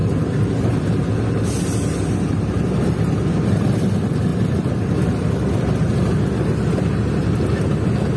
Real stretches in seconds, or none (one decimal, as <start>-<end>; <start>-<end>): 0.6-4.3; 5.5-8.2